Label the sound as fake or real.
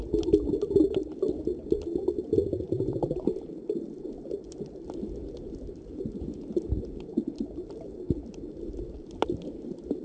real